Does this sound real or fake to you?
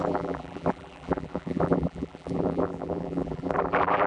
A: fake